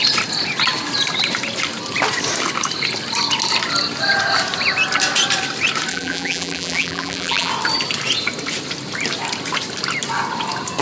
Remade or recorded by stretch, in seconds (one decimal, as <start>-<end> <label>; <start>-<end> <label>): 0.0-5.9 recorded; 5.9-7.5 remade; 7.5-10.8 recorded